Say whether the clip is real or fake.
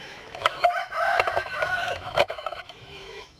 fake